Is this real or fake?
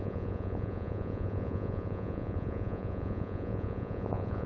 fake